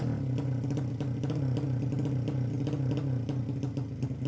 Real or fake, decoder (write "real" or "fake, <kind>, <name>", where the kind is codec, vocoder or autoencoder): real